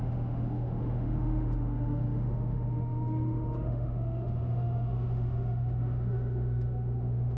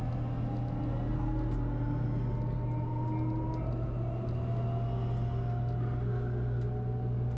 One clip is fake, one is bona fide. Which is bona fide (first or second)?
second